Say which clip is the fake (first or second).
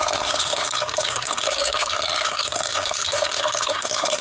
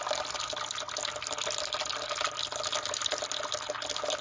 first